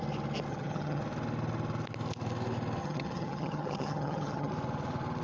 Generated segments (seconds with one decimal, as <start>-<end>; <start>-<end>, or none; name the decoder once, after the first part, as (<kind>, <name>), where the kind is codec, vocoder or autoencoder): 0.5-1.0 (vocoder, HiFi-GAN); 2.8-4.5